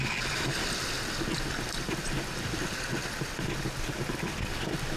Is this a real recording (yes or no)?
yes